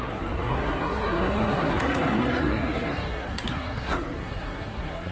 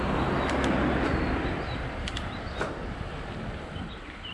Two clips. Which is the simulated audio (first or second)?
first